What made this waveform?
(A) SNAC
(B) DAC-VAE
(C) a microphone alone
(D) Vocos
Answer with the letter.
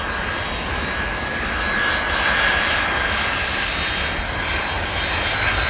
C